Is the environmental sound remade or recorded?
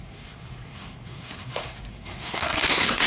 remade